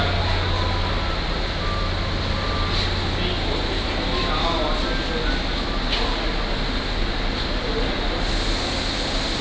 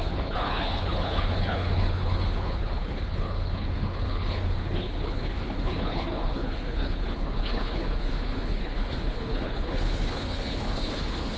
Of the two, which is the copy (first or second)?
second